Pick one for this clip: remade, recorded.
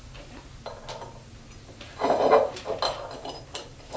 recorded